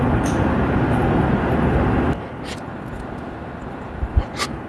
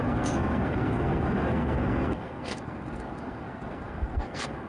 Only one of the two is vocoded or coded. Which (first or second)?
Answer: second